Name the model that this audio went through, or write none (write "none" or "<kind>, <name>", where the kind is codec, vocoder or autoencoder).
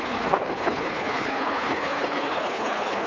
codec, HILCodec